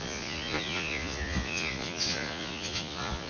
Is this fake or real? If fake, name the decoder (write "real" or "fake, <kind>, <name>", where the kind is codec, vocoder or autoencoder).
fake, vocoder, Vocos